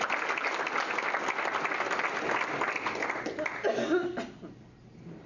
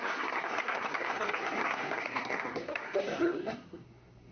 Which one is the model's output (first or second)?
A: second